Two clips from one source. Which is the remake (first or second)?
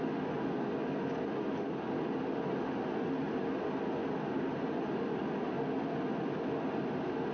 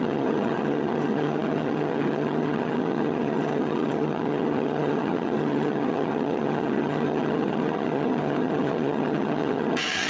second